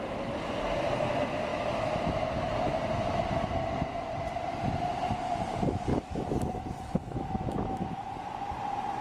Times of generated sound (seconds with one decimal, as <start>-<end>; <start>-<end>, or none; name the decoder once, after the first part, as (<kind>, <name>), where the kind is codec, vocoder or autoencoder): 1.5-2.5 (autoencoder, DAC-VAE); 5.9-8.0